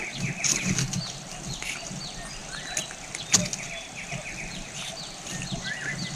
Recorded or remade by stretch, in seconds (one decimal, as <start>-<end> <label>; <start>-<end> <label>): 0.0-6.2 recorded